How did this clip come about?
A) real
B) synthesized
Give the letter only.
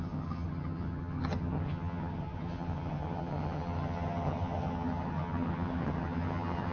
B